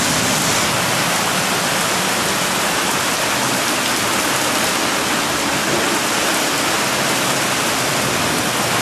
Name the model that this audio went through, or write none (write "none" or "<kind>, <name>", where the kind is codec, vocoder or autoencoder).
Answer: none